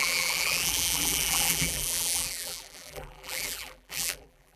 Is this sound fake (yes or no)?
yes